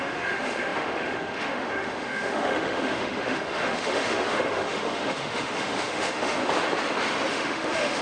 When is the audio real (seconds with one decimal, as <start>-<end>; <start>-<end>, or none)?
6.4-7.3